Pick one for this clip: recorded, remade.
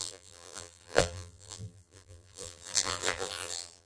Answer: remade